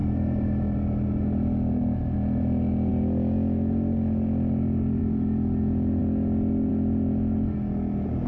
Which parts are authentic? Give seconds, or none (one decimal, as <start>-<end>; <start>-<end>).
0.0-8.3